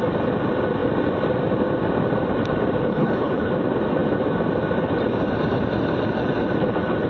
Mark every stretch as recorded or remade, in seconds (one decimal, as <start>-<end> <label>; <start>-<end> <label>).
0.0-2.9 recorded; 2.9-3.5 remade; 3.5-7.1 recorded